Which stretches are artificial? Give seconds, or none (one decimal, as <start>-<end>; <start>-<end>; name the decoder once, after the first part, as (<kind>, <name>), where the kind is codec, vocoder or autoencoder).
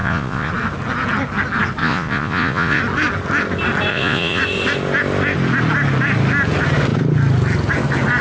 0.0-0.5 (vocoder, Vocos); 1.8-2.8; 3.9-4.4